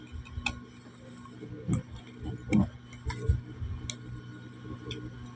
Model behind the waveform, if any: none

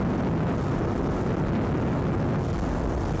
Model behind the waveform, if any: none